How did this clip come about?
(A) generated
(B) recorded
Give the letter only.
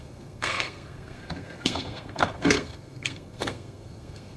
A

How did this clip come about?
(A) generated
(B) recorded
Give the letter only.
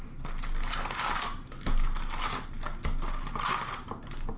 B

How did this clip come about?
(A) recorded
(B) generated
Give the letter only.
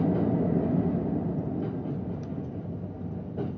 A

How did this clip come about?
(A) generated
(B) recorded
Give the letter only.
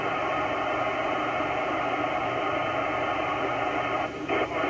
B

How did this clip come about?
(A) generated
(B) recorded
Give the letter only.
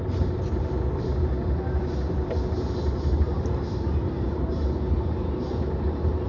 B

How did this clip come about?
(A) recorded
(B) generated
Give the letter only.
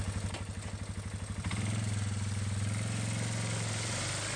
A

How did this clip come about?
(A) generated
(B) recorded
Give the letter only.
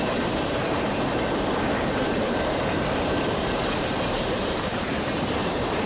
A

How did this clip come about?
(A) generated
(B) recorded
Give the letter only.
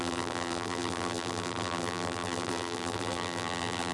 A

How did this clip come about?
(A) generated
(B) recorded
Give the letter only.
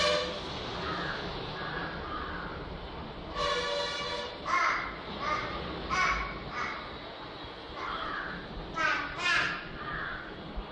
B